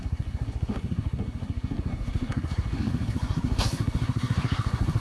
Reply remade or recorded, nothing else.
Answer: remade